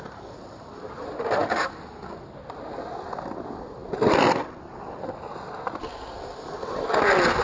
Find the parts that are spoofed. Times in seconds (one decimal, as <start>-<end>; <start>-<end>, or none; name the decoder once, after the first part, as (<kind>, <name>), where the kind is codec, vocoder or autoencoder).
none